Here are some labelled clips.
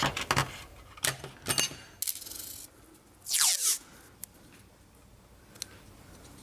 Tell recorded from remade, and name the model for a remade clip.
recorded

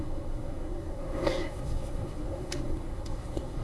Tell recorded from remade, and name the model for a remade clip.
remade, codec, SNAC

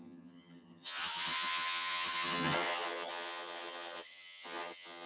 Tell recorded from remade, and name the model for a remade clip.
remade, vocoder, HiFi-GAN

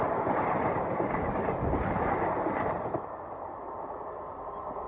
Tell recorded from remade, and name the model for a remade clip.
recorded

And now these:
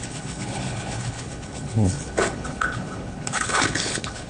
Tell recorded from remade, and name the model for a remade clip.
remade, codec, HILCodec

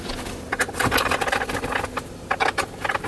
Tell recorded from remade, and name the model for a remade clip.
recorded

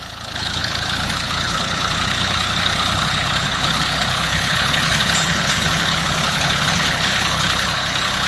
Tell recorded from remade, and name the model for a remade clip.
remade, codec, HILCodec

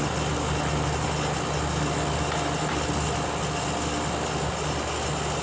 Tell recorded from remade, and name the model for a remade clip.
recorded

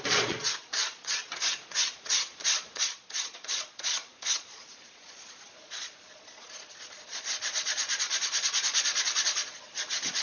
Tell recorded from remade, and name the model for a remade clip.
remade, vocoder, Vocos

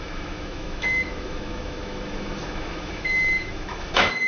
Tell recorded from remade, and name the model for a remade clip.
remade, autoencoder, DAC-VAE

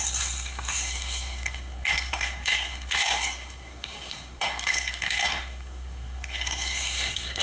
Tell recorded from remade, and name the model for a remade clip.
remade, codec, SNAC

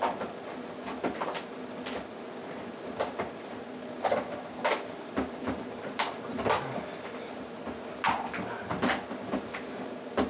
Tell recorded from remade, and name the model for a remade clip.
recorded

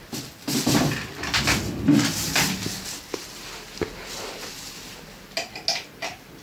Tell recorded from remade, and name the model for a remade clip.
recorded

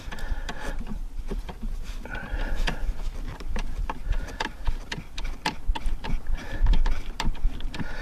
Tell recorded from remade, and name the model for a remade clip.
remade, vocoder, BigVGAN v2